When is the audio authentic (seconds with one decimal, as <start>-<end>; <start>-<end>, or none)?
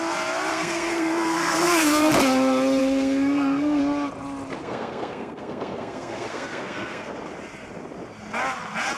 0.0-0.5; 2.1-2.8; 3.8-4.6; 7.1-9.0